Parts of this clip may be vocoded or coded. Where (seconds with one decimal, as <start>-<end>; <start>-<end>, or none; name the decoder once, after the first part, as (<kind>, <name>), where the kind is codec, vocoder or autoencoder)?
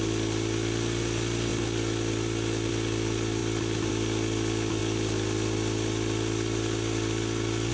none